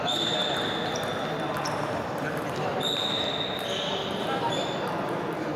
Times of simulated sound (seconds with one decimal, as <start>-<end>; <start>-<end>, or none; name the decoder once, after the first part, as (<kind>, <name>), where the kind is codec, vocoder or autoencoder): 0.0-0.4 (vocoder, BigVGAN v2); 1.1-2.7; 4.2-5.6